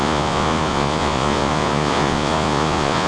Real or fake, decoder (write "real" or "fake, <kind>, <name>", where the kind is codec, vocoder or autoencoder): fake, vocoder, Vocos